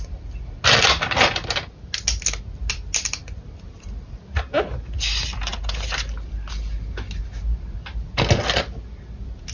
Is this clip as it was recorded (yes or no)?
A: yes